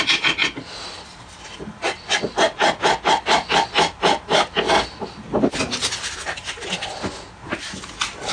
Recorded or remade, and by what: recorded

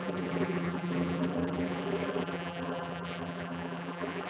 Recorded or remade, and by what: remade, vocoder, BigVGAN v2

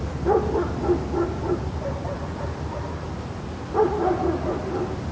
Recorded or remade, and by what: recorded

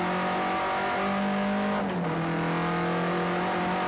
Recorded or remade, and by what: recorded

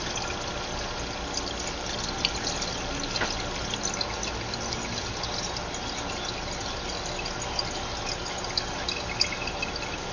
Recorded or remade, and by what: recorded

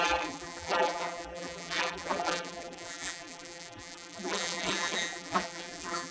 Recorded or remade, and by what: remade, vocoder, BigVGAN v2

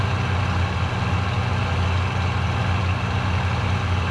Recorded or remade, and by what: recorded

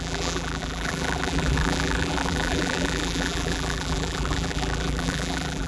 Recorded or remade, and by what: remade, vocoder, BigVGAN v2